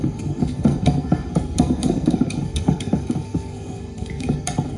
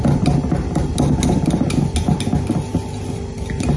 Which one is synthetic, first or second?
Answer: first